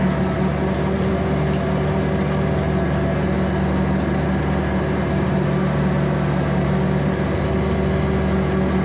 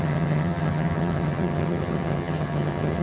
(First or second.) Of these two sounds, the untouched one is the first